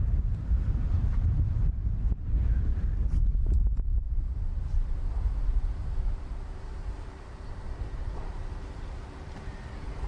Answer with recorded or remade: remade